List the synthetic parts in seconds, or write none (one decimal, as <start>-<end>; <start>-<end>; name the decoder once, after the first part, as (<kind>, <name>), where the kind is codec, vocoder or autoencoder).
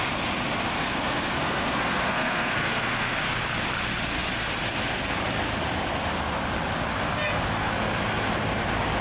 0.7-3.1 (codec, SNAC)